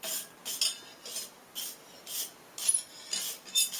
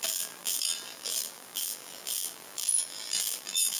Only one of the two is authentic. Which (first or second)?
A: first